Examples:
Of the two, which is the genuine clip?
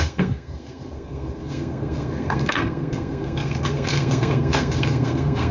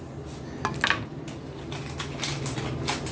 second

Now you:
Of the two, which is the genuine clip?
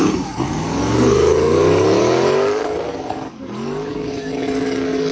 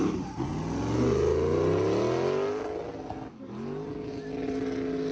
second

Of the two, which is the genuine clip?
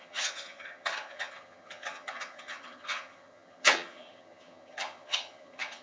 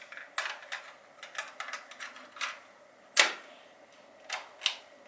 second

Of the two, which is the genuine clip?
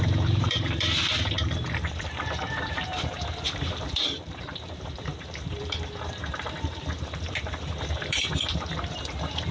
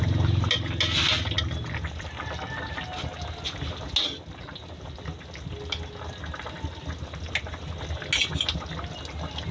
second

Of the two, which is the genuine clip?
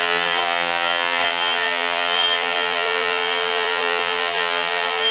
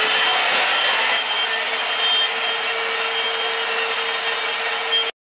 second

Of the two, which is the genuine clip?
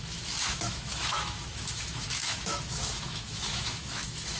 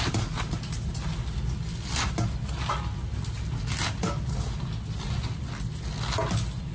second